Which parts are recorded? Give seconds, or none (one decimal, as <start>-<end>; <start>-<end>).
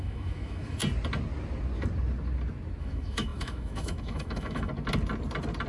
0.8-2.8; 4.7-5.7